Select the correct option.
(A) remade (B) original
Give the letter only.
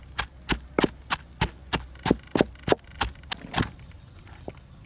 B